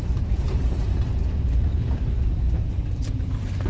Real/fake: fake